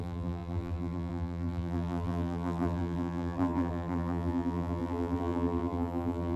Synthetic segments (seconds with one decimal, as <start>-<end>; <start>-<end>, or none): 0.0-6.4